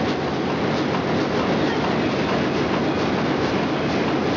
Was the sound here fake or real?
real